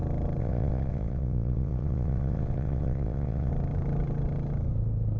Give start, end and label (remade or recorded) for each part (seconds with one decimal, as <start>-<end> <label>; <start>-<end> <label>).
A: 0.0-0.4 recorded; 0.4-3.5 remade; 3.5-5.2 recorded